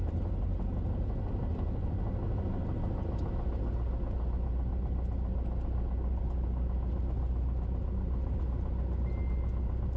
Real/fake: real